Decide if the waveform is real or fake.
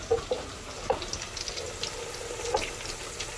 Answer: real